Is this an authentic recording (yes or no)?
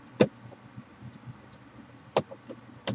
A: yes